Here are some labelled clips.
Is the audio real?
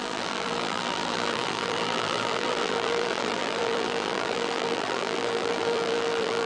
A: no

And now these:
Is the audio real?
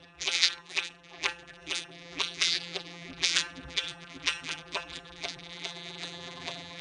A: no